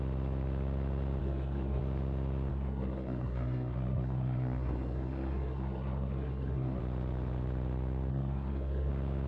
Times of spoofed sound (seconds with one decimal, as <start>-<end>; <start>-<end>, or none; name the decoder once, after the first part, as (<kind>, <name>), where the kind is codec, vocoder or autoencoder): 1.2-1.8 (codec, SNAC); 2.5-6.8; 8.1-8.9